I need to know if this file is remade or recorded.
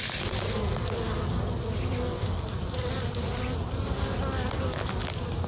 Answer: recorded